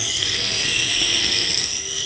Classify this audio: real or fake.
fake